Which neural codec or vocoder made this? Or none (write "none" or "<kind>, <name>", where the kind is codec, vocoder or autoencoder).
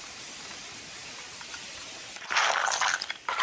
none